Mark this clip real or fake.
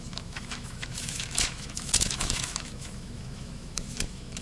fake